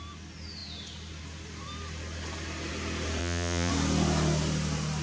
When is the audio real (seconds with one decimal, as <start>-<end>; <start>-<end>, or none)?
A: 0.0-3.2; 3.7-5.0